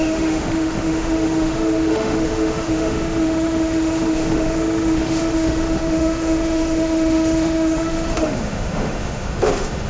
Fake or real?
fake